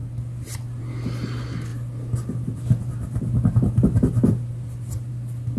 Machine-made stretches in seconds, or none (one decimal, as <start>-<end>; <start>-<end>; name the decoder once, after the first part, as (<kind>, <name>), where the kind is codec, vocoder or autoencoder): none